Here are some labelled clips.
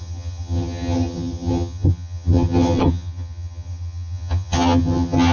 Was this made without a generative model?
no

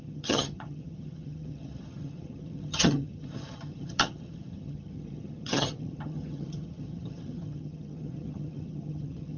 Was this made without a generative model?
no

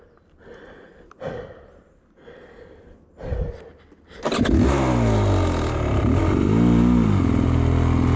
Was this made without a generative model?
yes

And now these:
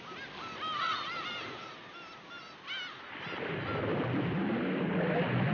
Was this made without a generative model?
yes